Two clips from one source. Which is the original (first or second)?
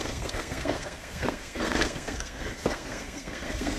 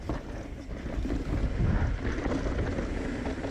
second